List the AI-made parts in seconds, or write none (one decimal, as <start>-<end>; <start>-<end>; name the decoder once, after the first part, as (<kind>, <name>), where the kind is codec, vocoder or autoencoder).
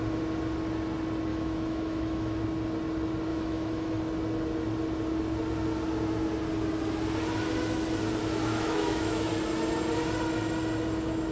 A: 1.3-2.4 (autoencoder, DAC-VAE); 3.3-4.0; 8.2-9.3